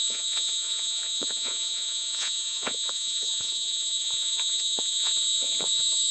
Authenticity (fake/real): fake